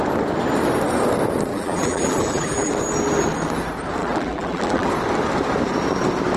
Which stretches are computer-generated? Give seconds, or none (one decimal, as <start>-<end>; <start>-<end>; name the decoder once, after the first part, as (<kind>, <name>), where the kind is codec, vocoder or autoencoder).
1.5-2.7 (vocoder, BigVGAN v2); 4.0-4.9